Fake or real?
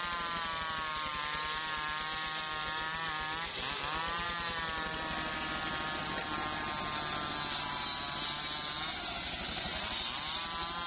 real